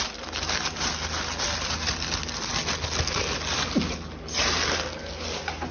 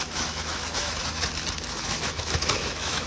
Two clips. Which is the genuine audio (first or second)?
first